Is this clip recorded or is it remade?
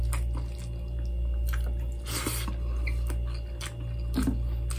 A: recorded